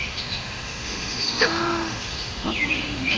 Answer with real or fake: fake